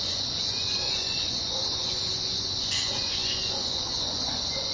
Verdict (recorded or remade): remade